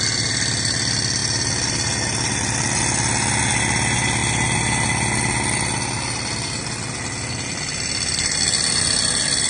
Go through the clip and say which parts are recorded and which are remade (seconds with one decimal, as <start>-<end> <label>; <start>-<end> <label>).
0.0-9.5 recorded